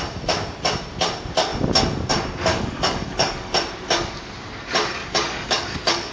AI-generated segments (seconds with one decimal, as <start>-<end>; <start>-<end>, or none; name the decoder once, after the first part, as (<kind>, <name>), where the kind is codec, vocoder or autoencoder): 2.5-3.5 (codec, DAC); 5.0-6.1